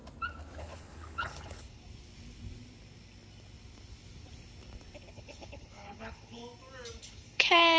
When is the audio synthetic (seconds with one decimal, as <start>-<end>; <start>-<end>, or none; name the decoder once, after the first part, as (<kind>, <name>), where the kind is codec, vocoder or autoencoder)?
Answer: 0.6-1.8 (codec, HILCodec); 5.1-6.4; 7.0-7.8